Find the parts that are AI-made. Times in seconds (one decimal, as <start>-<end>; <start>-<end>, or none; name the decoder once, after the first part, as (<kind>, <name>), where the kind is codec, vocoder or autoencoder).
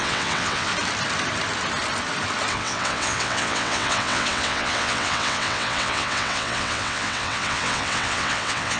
0.0-0.7 (vocoder, WaveNeXt); 2.5-8.8